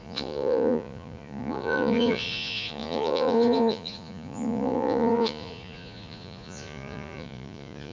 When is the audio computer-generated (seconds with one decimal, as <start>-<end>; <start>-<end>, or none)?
0.0-7.9